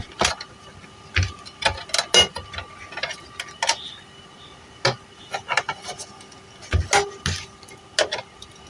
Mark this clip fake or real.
real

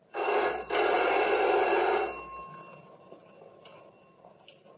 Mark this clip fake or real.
real